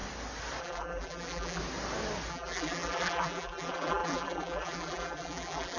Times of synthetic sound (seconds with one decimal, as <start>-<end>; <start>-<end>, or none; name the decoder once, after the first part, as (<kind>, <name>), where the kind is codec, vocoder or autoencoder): 0.6-1.6 (vocoder, BigVGAN v2); 2.3-5.8